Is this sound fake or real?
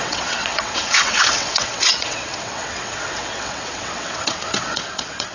fake